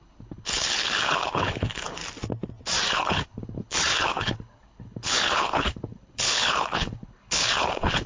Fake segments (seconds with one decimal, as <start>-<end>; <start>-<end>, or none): 0.0-2.0; 2.9-8.1